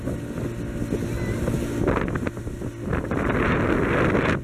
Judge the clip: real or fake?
real